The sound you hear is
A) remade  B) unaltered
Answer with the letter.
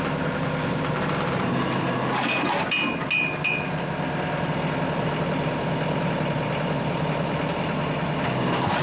B